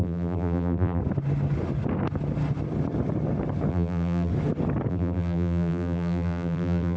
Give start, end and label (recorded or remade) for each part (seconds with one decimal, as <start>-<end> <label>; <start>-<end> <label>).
0.0-1.0 remade; 1.0-3.7 recorded; 3.7-4.3 remade; 4.3-4.9 recorded; 4.9-7.0 remade